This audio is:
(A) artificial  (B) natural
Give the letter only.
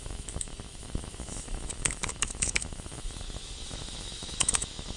A